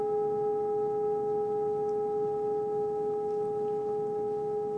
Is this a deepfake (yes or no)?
no